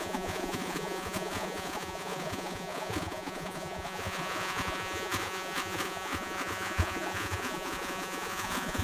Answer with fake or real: fake